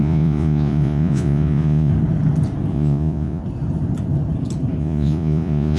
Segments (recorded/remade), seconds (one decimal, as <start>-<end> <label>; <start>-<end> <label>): 0.0-1.9 remade; 1.9-2.7 recorded; 2.7-3.4 remade; 3.4-4.8 recorded; 4.8-5.8 remade